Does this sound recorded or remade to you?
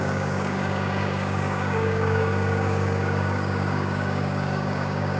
remade